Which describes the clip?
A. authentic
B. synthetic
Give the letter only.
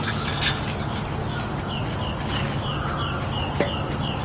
A